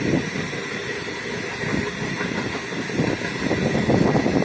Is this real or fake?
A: real